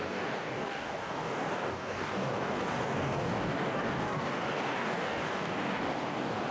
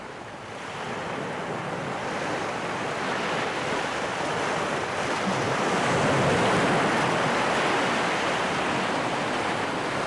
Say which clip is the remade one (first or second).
first